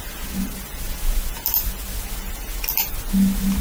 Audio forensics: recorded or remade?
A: recorded